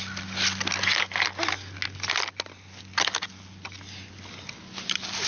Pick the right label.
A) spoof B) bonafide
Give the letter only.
B